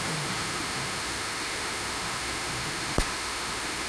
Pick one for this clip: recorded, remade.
remade